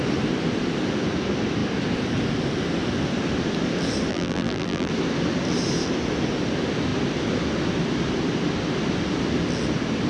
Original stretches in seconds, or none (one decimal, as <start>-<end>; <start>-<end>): 0.0-4.1; 4.9-10.1